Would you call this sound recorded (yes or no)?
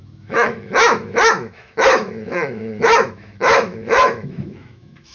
no